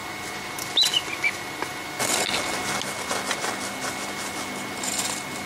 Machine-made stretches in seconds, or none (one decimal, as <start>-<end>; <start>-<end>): none